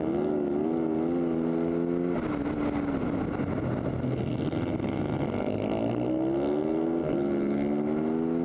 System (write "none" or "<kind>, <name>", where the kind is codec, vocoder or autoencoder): none